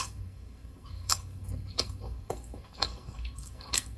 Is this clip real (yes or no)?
no